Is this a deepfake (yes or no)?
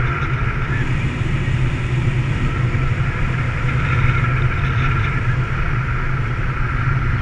no